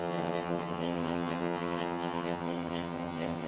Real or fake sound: fake